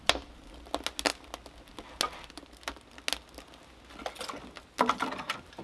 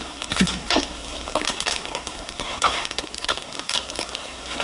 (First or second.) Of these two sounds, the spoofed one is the second